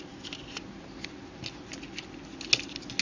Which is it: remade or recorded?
recorded